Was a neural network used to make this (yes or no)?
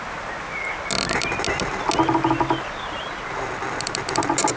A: no